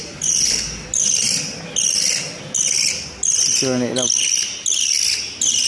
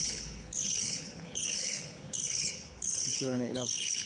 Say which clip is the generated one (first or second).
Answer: second